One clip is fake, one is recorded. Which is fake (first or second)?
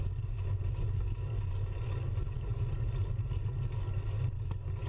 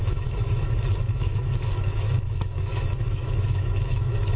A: second